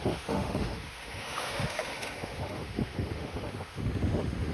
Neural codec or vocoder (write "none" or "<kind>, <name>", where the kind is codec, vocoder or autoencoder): autoencoder, DAC-VAE